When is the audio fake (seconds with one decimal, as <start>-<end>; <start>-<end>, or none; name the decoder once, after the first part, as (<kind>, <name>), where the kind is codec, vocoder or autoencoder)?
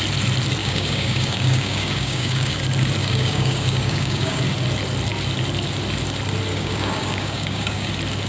0.6-2.6 (codec, DAC); 3.0-4.4; 6.5-7.9